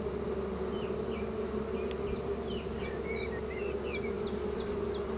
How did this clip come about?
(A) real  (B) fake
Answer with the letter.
A